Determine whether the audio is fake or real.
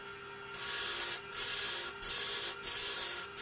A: real